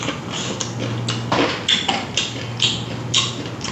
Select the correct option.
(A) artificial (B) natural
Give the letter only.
B